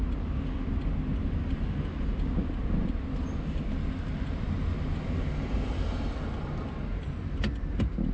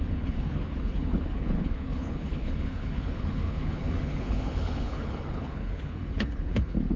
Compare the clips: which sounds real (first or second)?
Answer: first